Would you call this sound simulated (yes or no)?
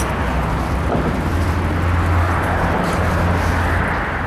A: no